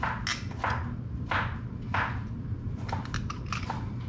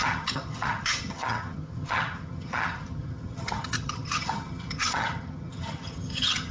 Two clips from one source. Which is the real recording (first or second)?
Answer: first